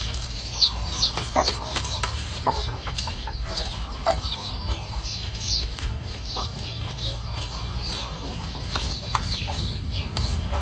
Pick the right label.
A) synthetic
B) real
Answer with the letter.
A